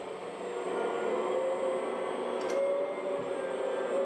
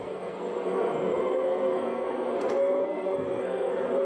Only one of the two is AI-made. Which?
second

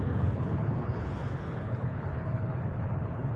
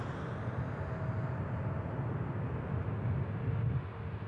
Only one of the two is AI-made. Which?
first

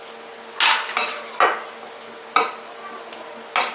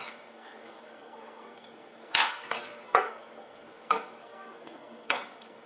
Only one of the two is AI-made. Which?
second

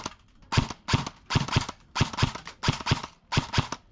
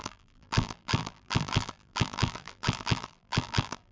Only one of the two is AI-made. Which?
second